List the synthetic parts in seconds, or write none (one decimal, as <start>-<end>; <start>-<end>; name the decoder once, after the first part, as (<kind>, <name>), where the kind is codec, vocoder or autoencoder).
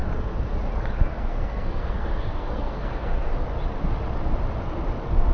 1.1-3.3 (codec, SNAC)